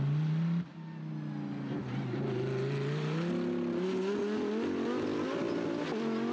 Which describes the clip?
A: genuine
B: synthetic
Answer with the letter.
A